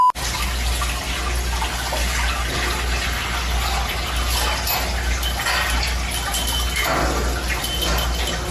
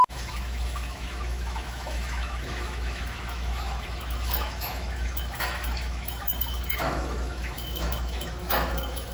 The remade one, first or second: second